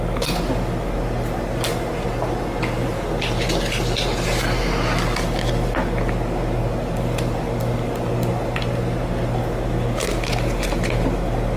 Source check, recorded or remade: recorded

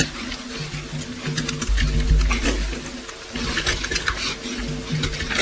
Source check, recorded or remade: recorded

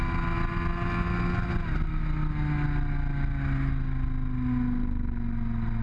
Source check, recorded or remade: recorded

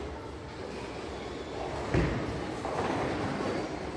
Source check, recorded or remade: recorded